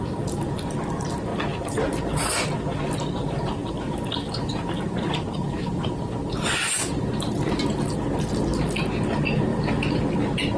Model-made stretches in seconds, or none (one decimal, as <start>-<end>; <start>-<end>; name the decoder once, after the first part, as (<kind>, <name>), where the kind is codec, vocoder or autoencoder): 9.5-10.1 (vocoder, BigVGAN v2)